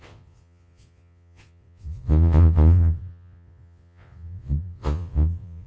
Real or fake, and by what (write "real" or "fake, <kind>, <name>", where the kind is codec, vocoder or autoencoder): fake, vocoder, Vocos